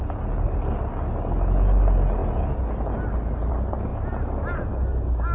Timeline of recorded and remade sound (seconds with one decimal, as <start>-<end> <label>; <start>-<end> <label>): 0.0-5.3 recorded